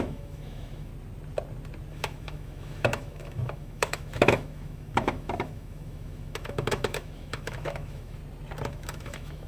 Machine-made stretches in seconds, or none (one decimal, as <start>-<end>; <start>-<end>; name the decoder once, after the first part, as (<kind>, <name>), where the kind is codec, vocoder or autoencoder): 0.0-0.9 (autoencoder, DAC-VAE); 1.9-8.2; 8.7-9.5